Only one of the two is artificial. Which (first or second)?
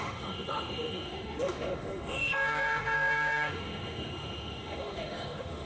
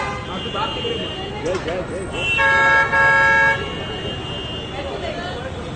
first